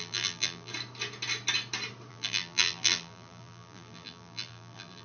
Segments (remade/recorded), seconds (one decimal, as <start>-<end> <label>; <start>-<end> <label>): 0.0-0.7 remade; 0.7-2.1 recorded; 2.1-5.0 remade